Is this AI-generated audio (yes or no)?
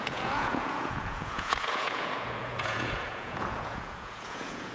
yes